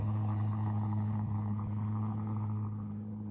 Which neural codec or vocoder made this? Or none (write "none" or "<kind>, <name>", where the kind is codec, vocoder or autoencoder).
codec, HILCodec